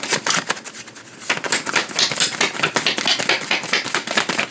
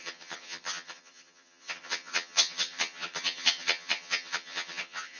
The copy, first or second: second